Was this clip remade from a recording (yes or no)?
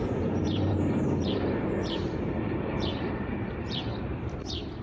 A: yes